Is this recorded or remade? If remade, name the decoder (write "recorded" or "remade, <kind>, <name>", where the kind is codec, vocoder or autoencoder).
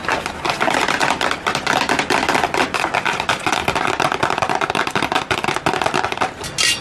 recorded